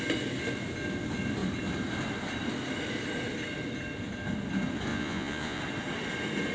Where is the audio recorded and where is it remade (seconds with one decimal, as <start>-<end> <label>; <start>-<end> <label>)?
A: 0.0-4.9 recorded; 4.9-5.6 remade; 5.6-6.5 recorded